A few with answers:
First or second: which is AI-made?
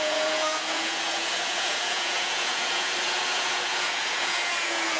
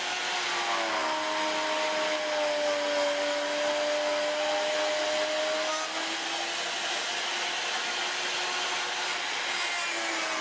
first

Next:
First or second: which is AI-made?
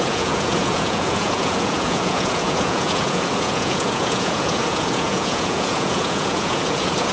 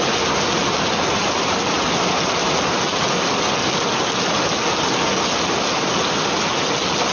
first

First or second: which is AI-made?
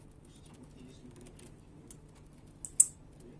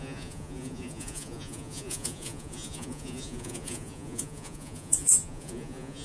second